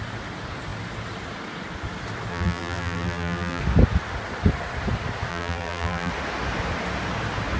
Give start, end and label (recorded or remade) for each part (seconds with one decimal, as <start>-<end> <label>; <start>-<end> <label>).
0.0-2.3 recorded; 2.3-3.6 remade; 3.6-5.3 recorded; 5.3-6.1 remade; 6.1-7.6 recorded

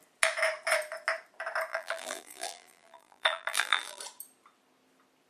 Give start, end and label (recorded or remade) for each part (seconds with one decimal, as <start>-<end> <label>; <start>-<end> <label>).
0.0-1.7 recorded; 1.7-4.0 remade; 4.0-5.3 recorded

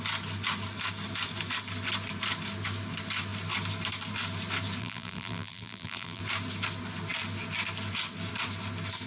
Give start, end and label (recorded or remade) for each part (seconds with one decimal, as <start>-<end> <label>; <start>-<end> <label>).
0.0-4.8 recorded; 4.8-6.2 remade; 6.2-9.1 recorded